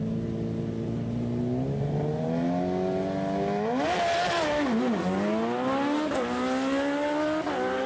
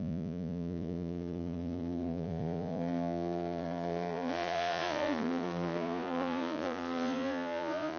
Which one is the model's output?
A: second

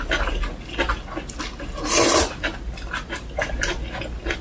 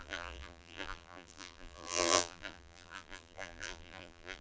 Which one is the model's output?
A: second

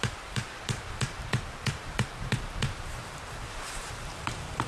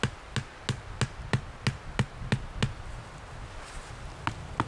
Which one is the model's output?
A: first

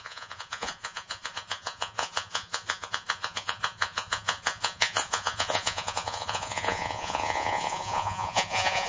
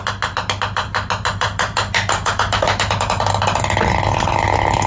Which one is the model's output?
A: first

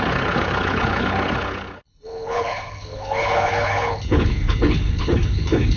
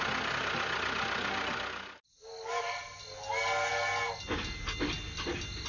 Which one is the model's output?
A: first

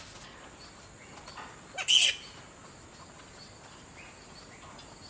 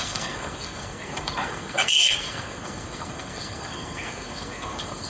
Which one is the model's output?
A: second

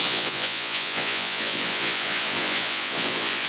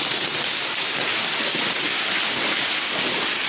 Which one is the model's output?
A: first